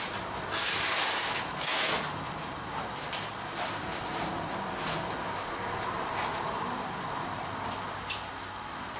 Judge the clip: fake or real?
real